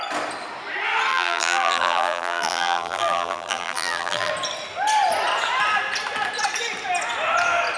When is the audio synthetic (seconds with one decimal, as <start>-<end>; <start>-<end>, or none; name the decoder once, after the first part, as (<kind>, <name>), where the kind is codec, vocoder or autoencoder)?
1.1-4.3 (vocoder, BigVGAN v2)